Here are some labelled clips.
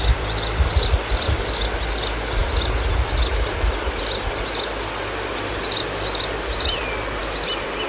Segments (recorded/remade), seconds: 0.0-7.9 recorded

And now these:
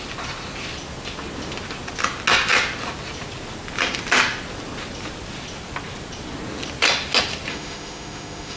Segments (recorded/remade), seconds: 0.0-7.5 recorded; 7.5-8.6 remade

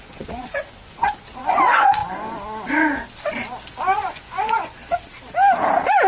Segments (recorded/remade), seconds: 0.0-2.0 remade; 2.0-3.7 recorded; 3.7-4.8 remade; 4.8-6.1 recorded

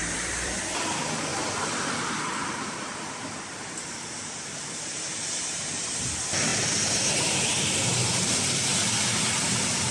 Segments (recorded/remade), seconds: 0.0-0.6 remade; 0.6-1.3 recorded; 1.3-3.7 remade; 3.7-9.9 recorded

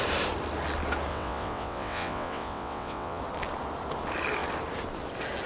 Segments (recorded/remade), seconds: 0.0-1.1 recorded; 1.1-3.2 remade; 3.2-5.5 recorded